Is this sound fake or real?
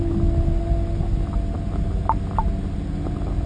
real